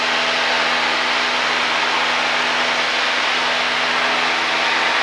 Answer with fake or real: real